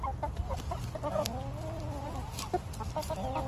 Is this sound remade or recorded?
recorded